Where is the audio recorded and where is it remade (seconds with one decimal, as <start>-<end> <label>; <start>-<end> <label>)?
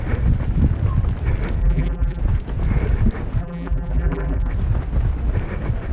0.0-1.6 recorded; 1.6-2.2 remade; 2.2-3.4 recorded; 3.4-4.5 remade; 4.5-5.9 recorded